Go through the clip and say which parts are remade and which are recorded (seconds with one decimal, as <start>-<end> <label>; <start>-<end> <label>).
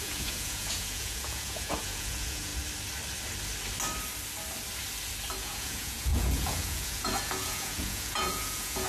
0.0-2.5 remade; 2.5-5.4 recorded; 5.4-8.9 remade